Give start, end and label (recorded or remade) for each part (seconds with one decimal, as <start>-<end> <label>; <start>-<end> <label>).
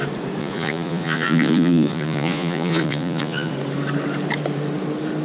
0.0-0.4 recorded; 0.4-3.5 remade; 3.5-5.2 recorded